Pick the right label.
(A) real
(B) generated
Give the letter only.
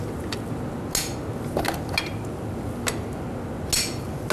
A